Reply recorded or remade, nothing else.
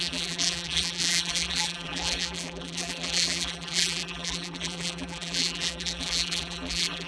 remade